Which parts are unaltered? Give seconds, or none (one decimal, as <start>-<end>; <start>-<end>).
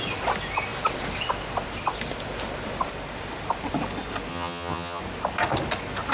0.0-4.3; 5.0-6.1